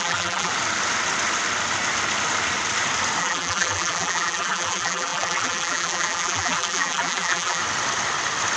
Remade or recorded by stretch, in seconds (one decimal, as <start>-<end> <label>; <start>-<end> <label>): 0.0-0.5 remade; 0.5-3.2 recorded; 3.2-7.6 remade; 7.6-8.6 recorded